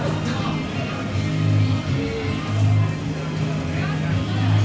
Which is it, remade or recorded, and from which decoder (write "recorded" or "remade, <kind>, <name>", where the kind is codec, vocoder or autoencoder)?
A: recorded